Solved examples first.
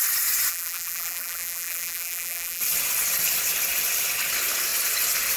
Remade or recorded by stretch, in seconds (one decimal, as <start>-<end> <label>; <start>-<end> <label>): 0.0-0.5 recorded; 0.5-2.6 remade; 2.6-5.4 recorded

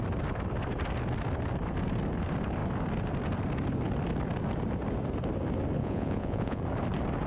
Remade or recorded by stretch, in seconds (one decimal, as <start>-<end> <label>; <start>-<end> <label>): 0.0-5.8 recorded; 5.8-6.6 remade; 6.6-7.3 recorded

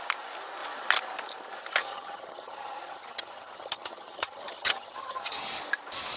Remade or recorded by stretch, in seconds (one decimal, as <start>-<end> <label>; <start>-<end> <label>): 0.0-1.8 recorded; 1.8-5.5 remade; 5.5-6.2 recorded